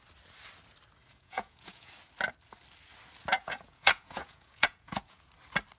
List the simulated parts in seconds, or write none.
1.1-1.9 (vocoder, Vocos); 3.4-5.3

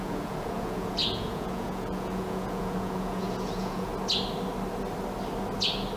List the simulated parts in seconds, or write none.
0.0-3.9 (vocoder, Vocos)

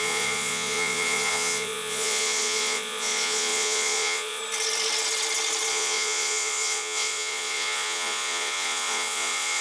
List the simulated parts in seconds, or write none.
0.0-4.4 (vocoder, Vocos); 5.7-9.6